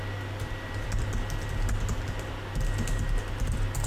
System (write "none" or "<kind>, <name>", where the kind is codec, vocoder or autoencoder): none